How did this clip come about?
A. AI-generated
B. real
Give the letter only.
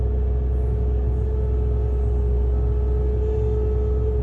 B